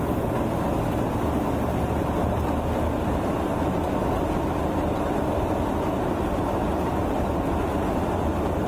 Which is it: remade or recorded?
recorded